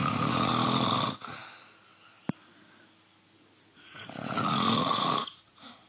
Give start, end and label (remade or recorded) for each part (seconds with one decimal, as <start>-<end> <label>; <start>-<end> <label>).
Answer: 0.0-0.5 remade; 0.5-3.7 recorded; 3.7-5.9 remade